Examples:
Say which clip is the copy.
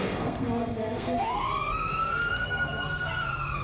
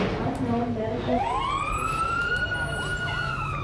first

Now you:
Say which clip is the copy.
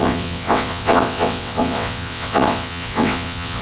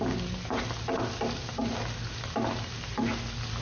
first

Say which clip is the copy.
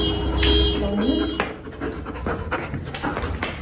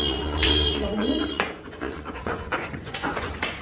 second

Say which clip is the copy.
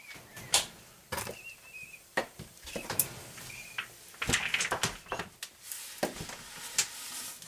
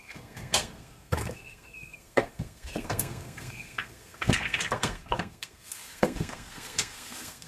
second